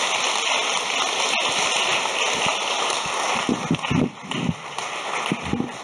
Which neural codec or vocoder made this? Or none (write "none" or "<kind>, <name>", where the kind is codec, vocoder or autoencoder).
none